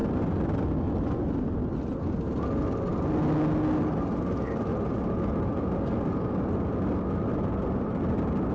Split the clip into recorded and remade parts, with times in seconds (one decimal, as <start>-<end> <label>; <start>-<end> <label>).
0.0-8.5 recorded